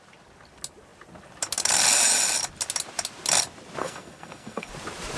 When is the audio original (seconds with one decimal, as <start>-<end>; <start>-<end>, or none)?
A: 0.0-3.8; 4.7-5.2